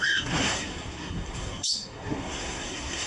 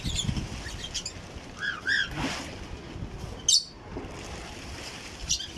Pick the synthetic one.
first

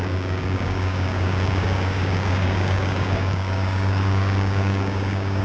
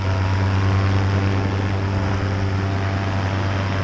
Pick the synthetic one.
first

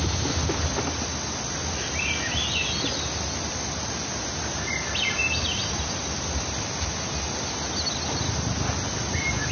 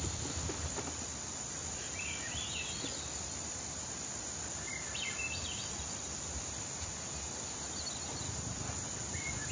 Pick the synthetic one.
second